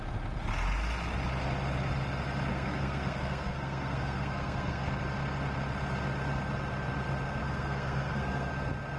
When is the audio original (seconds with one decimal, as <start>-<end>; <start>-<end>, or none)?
0.0-2.5; 4.9-7.4; 8.5-9.0